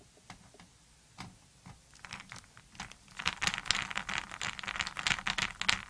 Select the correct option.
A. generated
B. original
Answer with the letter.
B